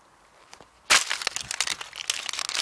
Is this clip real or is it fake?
real